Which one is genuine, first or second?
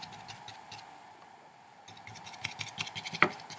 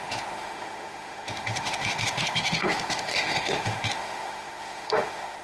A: first